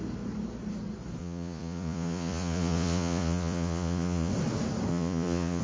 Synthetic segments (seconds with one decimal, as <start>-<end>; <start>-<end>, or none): 1.2-4.3; 4.9-5.6